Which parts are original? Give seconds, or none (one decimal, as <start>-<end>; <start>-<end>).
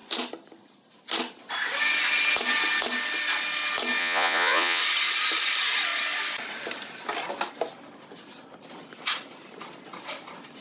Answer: 0.0-4.0; 4.8-10.6